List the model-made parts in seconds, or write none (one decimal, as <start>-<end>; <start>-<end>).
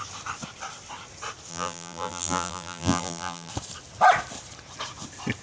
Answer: 1.5-3.5